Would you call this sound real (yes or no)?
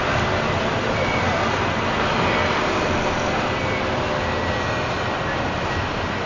yes